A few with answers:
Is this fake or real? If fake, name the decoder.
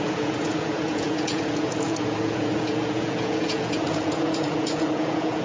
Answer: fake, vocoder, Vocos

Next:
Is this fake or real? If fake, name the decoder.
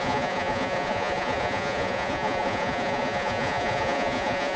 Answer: fake, vocoder, Vocos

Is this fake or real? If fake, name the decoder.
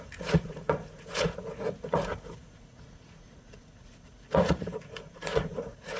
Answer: fake, vocoder, Vocos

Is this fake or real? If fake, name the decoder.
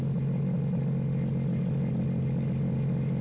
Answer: real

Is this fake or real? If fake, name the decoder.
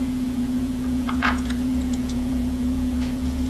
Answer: fake, vocoder, Vocos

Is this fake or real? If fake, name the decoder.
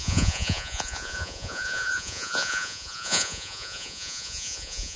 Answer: fake, vocoder, Vocos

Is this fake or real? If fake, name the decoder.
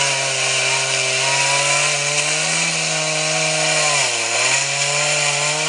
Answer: real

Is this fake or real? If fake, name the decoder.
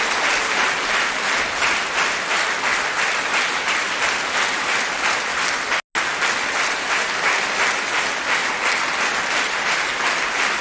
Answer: real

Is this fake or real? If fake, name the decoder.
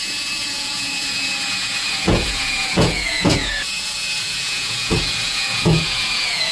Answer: fake, vocoder, Vocos